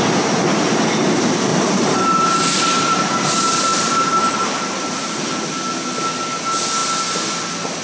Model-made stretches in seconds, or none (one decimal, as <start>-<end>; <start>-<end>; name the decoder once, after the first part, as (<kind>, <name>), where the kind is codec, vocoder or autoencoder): 1.5-3.3 (vocoder, BigVGAN v2); 3.7-5.3